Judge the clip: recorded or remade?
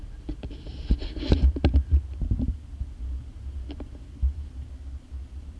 recorded